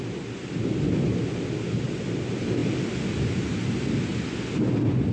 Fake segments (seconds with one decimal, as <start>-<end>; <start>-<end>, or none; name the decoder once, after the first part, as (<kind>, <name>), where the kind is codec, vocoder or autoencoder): none